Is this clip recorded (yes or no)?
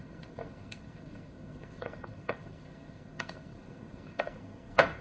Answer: no